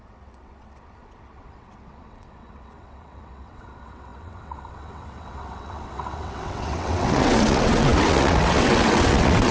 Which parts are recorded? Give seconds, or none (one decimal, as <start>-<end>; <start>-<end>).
none